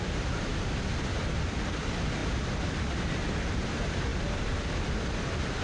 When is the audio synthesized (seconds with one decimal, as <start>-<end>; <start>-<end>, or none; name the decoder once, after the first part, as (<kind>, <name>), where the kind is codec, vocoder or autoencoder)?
none